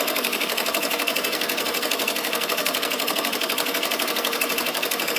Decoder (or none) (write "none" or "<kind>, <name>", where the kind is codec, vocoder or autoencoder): codec, SNAC